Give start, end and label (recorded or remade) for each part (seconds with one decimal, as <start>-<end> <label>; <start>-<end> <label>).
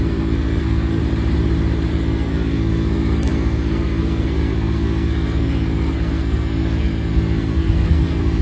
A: 0.0-1.0 remade; 1.0-1.9 recorded; 1.9-8.4 remade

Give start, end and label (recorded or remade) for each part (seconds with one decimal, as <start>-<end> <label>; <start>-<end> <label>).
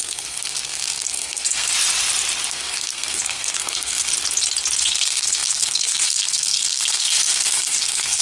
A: 0.0-1.7 remade; 1.7-2.5 recorded; 2.5-4.1 remade; 4.1-4.8 recorded; 4.8-8.2 remade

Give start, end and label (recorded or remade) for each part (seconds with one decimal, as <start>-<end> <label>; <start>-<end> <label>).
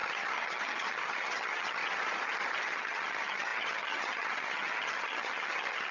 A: 0.0-1.8 remade; 1.8-2.6 recorded; 2.6-5.9 remade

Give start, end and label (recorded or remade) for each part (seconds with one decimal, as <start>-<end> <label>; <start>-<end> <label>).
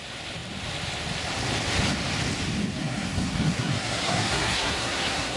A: 0.0-2.8 recorded; 2.8-5.4 remade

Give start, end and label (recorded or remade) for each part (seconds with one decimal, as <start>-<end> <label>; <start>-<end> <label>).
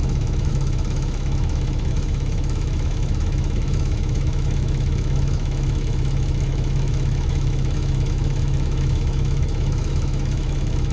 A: 0.0-10.9 remade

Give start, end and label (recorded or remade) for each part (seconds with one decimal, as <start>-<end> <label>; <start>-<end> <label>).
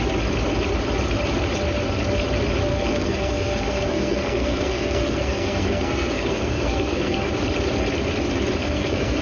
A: 0.0-2.7 recorded; 2.7-7.3 remade; 7.3-8.6 recorded; 8.6-9.2 remade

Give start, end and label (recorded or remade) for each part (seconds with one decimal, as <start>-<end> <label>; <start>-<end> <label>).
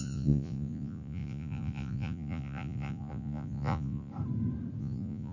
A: 0.0-4.1 remade; 4.1-4.8 recorded; 4.8-5.3 remade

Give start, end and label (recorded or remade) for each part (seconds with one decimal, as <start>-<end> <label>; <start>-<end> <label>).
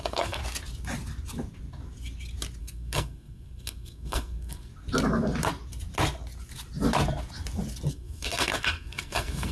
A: 0.0-0.4 remade; 0.4-2.6 recorded; 2.6-4.7 remade; 4.7-7.9 recorded; 7.9-9.5 remade